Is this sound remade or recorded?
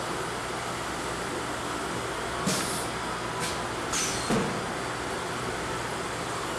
recorded